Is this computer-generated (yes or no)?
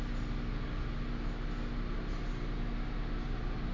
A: no